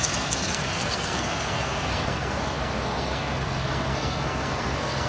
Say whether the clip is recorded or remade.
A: remade